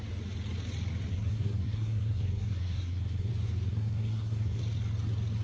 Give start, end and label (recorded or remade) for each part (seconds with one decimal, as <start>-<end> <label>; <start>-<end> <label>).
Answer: 0.0-1.1 recorded; 1.1-3.3 remade; 3.3-3.7 recorded; 3.7-4.6 remade; 4.6-5.4 recorded